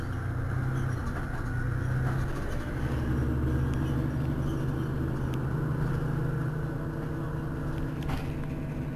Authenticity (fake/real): real